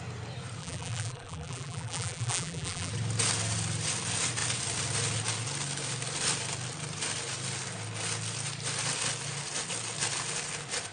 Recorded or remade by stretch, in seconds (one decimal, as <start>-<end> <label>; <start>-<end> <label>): 0.0-0.6 recorded; 0.6-2.9 remade; 2.9-10.9 recorded